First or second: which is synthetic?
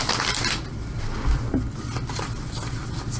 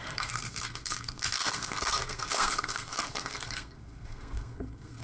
second